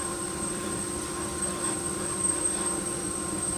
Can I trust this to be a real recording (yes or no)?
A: no